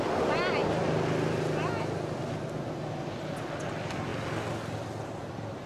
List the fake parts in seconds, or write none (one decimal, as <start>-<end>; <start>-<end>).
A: none